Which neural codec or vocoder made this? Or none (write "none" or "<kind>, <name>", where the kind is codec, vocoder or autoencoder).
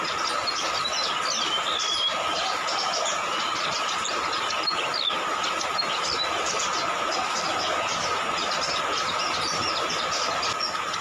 none